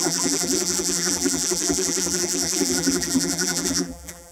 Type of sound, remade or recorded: remade